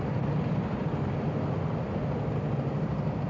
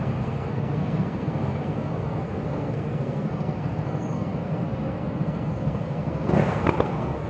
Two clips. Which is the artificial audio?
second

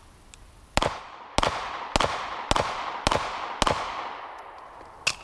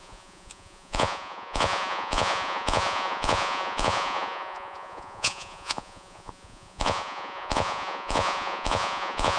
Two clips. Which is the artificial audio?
second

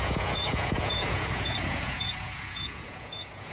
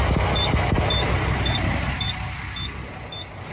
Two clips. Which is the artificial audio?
first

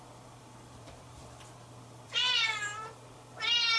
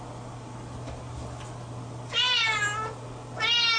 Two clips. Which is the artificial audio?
first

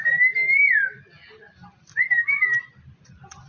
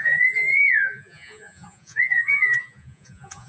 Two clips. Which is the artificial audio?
second